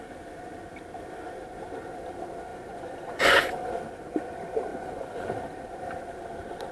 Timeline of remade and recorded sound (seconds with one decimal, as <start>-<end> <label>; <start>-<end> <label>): 0.0-2.5 recorded; 2.5-3.7 remade; 3.7-4.7 recorded; 4.7-5.3 remade; 5.3-6.7 recorded